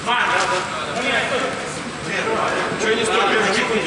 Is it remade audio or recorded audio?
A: recorded